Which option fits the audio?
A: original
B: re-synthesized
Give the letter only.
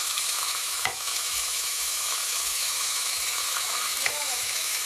B